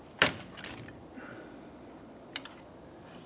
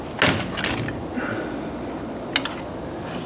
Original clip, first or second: second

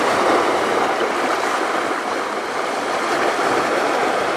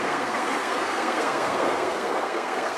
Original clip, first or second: first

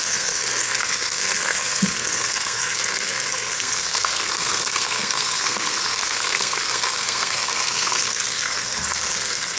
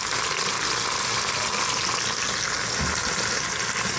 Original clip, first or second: second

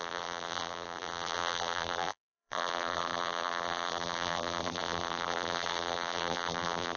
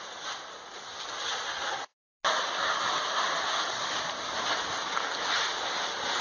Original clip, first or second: second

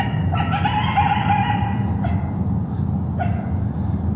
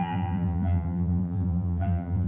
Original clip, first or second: first